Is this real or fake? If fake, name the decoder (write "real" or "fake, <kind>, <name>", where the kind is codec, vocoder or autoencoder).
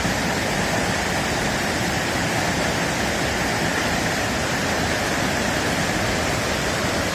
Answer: fake, vocoder, BigVGAN v2